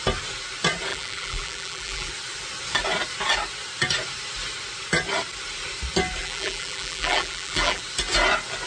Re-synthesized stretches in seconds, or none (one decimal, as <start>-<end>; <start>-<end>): 0.9-2.1; 6.2-7.8